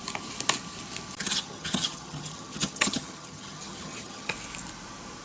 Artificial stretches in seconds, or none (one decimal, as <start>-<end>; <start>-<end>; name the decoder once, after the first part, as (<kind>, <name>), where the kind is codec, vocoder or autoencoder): 1.2-4.3 (vocoder, HiFi-GAN)